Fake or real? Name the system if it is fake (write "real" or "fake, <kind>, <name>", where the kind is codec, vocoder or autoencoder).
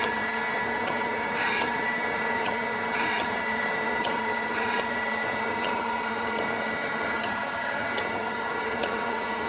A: fake, vocoder, HiFi-GAN